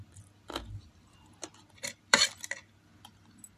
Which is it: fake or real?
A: fake